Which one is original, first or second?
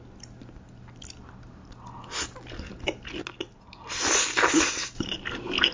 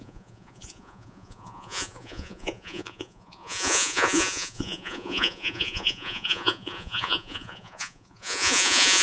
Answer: first